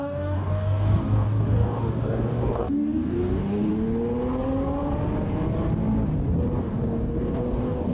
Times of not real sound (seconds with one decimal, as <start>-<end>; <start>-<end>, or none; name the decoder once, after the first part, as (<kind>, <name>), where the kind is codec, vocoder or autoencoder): 0.0-3.7 (codec, DAC); 6.6-7.9